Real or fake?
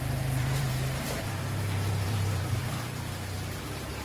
fake